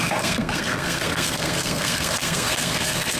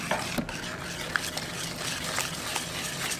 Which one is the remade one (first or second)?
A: first